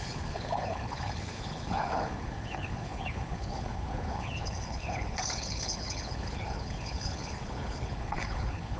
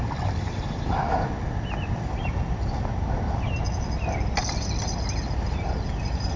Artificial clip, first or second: first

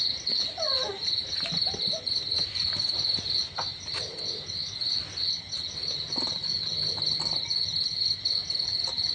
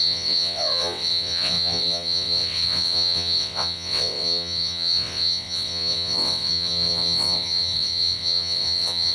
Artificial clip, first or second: second